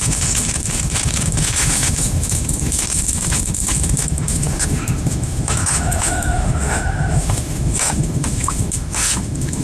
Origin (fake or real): fake